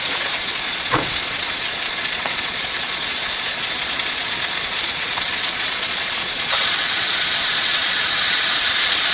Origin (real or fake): fake